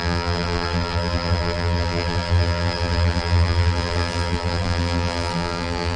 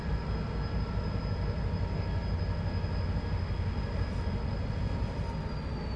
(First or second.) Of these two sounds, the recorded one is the second